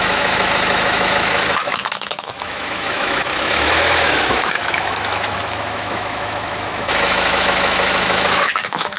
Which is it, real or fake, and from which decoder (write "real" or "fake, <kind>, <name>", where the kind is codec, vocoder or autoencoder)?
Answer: fake, autoencoder, DAC-VAE